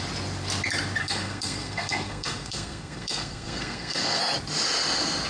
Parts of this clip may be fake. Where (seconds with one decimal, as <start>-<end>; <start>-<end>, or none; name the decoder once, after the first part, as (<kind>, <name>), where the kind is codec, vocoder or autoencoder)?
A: 1.0-4.2 (codec, SNAC)